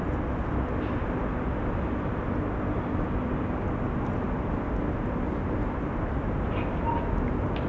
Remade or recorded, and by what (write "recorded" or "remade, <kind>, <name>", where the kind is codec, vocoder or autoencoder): recorded